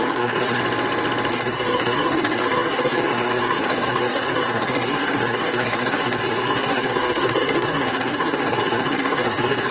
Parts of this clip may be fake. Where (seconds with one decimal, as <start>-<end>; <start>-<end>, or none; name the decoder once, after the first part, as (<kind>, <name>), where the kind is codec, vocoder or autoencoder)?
0.0-0.6 (codec, SNAC); 1.3-9.7